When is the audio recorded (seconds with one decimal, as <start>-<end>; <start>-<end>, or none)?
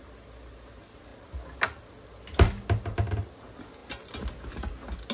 0.0-5.1